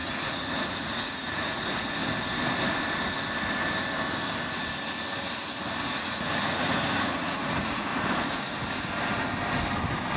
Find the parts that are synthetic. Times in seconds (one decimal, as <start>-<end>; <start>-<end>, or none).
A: 0.0-2.0; 5.9-7.9